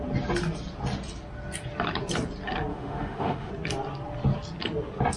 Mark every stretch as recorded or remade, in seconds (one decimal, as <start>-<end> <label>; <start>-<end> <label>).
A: 0.0-2.7 recorded; 2.7-3.5 remade; 3.5-5.2 recorded